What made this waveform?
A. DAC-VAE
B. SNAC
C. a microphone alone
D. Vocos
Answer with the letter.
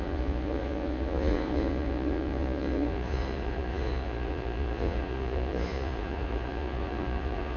D